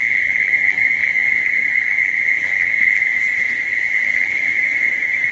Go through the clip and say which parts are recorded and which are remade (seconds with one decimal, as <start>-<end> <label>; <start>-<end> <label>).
0.0-3.1 remade; 3.1-3.7 recorded; 3.7-4.5 remade; 4.5-5.3 recorded